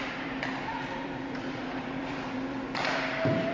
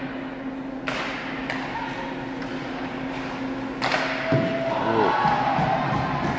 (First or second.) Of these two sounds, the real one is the second